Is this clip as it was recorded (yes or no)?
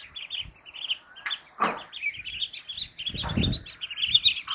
yes